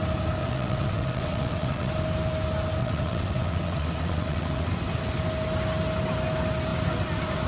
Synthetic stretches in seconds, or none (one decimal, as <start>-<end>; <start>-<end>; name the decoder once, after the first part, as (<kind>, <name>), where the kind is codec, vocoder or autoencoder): 0.4-1.9 (vocoder, WaveNeXt); 2.8-4.7